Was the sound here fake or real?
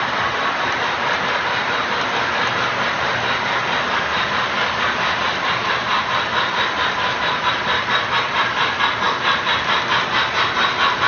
fake